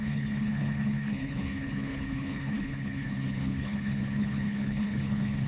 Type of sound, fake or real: fake